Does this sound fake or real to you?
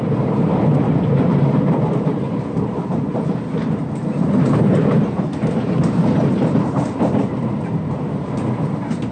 fake